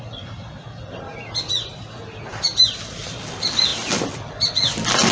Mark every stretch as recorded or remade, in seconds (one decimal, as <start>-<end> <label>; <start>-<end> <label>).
0.0-5.1 recorded